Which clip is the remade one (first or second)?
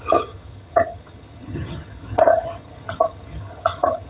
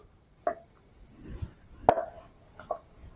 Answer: first